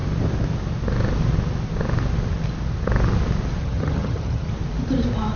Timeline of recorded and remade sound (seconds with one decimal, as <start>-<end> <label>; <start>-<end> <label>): 0.0-3.6 recorded; 3.6-4.5 remade; 4.5-5.4 recorded

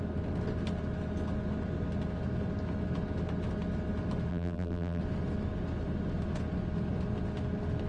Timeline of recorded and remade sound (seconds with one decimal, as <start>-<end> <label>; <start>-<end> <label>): 0.0-4.3 recorded; 4.3-5.0 remade; 5.0-7.9 recorded

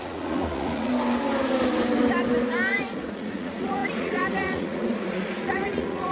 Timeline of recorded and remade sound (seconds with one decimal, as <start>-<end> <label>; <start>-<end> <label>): 0.0-0.9 remade; 0.9-2.7 recorded; 2.7-6.1 remade

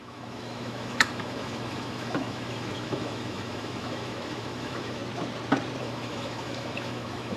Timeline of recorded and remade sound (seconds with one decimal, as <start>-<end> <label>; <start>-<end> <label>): 0.0-5.0 remade; 5.0-5.8 recorded; 5.8-7.4 remade

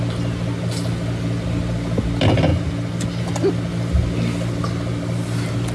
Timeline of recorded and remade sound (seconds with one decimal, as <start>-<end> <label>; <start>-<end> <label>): 0.0-5.7 recorded

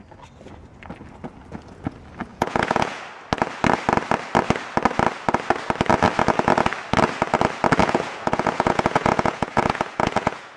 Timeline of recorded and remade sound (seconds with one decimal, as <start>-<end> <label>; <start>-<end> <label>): 0.0-2.3 recorded; 2.3-3.0 remade; 3.0-7.8 recorded; 7.8-10.6 remade

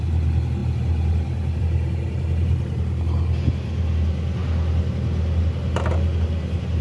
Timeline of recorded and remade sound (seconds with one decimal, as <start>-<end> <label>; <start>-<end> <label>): 0.0-6.8 recorded

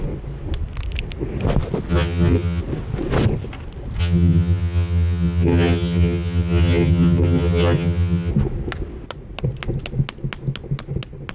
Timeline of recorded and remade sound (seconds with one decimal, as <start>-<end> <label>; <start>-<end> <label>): 0.0-1.9 recorded; 1.9-2.6 remade; 2.6-4.0 recorded; 4.0-8.3 remade; 8.3-11.3 recorded